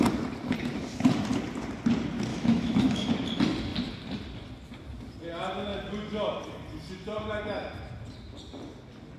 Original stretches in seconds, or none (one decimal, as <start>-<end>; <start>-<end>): 0.0-2.3; 3.1-9.2